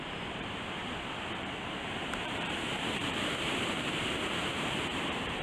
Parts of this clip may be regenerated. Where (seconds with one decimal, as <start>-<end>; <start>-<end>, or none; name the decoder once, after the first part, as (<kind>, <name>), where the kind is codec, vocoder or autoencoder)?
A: 0.0-0.8 (vocoder, BigVGAN v2); 1.7-5.4